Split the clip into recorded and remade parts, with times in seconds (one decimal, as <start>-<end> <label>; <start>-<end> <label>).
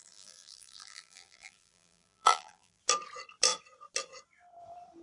0.0-2.8 remade; 2.8-5.0 recorded